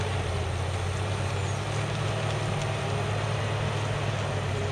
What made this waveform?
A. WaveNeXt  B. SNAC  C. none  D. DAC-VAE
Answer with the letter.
C